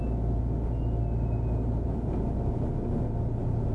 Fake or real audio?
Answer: real